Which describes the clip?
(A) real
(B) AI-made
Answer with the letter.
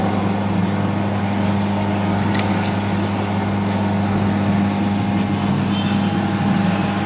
A